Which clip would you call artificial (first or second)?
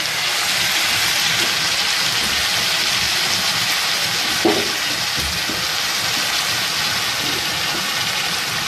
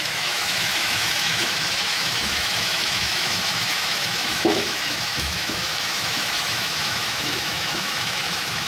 second